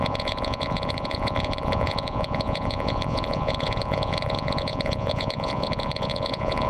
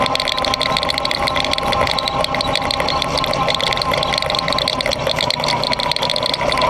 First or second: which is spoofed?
first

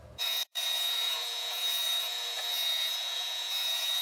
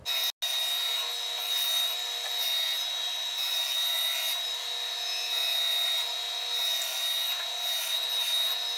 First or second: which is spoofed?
first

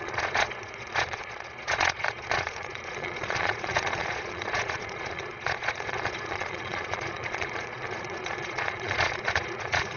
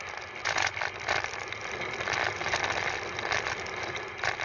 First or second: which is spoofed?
first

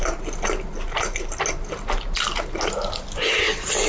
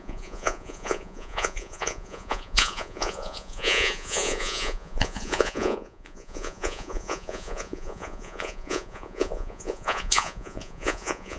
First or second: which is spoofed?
second